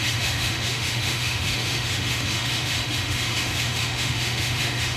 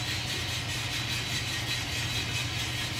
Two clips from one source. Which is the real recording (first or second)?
second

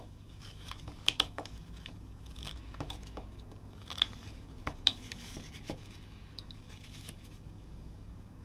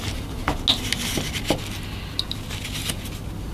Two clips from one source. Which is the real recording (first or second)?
second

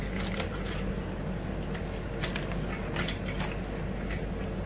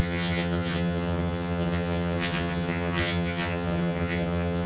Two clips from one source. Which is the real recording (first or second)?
first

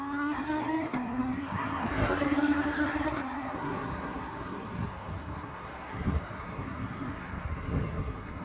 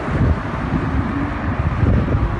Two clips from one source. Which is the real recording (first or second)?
second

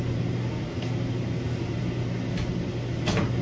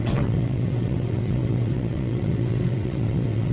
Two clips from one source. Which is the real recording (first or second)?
first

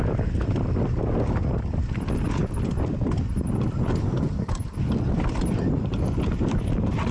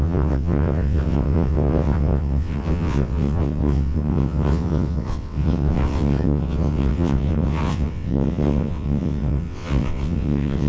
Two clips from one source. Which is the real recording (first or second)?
first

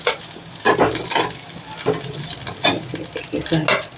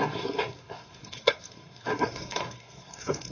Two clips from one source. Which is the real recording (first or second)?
first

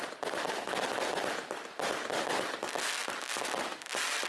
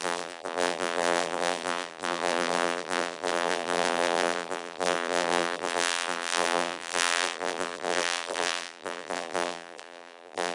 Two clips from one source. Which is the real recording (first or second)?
first